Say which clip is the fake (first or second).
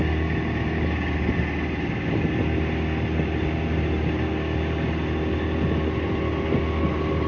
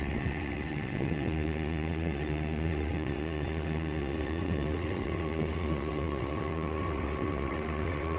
second